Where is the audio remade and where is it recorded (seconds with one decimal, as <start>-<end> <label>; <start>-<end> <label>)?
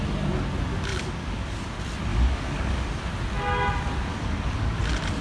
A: 0.0-0.9 recorded; 0.9-1.6 remade; 1.6-2.1 recorded; 2.1-2.9 remade; 2.9-4.1 recorded; 4.1-4.8 remade; 4.8-5.2 recorded